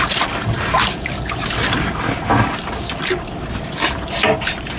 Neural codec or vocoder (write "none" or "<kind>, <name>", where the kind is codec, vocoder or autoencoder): none